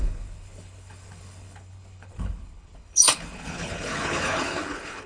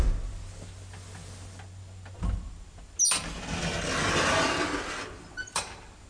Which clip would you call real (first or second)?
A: second